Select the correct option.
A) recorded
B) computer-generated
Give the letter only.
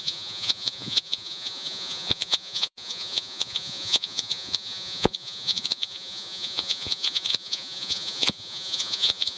B